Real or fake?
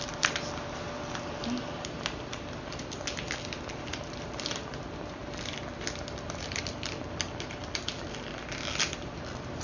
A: real